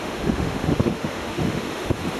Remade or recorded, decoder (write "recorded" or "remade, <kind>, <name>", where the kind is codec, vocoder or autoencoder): remade, autoencoder, DAC-VAE